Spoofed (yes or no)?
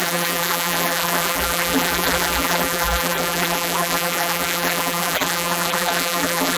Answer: yes